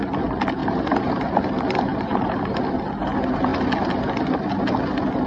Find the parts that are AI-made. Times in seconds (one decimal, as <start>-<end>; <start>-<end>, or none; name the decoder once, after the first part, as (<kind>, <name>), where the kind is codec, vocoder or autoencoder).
0.6-1.2 (vocoder, BigVGAN v2); 1.9-2.6